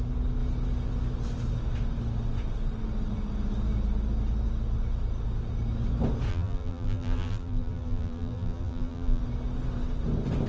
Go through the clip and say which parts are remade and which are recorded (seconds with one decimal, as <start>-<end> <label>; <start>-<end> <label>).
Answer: 0.0-6.3 recorded; 6.3-9.2 remade; 9.2-10.5 recorded